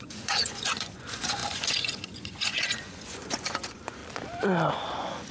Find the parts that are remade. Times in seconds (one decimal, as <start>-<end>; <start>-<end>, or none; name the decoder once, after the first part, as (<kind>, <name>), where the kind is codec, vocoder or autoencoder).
0.0-4.0 (vocoder, Vocos); 4.7-5.3